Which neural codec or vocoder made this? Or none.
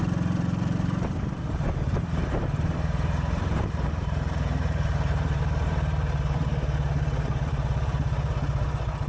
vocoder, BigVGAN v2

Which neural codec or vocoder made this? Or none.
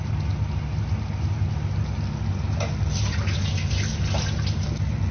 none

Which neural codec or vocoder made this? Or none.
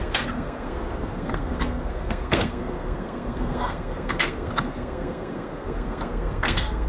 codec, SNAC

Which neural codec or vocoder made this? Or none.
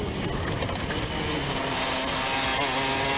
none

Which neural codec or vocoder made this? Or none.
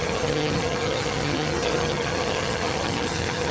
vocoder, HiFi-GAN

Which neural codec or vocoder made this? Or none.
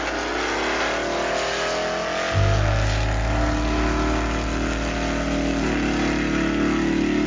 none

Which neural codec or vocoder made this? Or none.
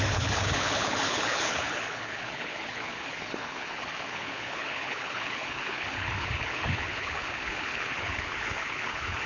codec, HILCodec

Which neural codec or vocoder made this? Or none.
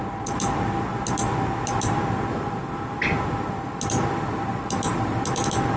none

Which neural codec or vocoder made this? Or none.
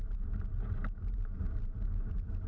vocoder, BigVGAN v2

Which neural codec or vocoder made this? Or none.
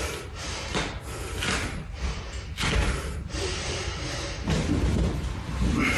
vocoder, BigVGAN v2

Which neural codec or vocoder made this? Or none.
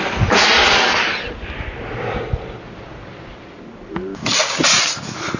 none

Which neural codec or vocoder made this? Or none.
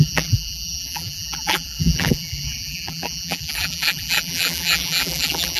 vocoder, BigVGAN v2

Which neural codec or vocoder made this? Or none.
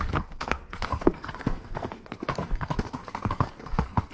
codec, SNAC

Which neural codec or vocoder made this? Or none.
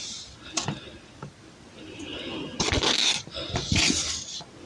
none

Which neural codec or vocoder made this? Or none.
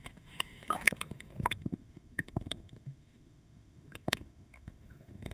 autoencoder, DAC-VAE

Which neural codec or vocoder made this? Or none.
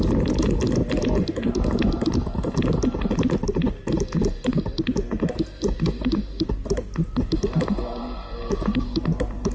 none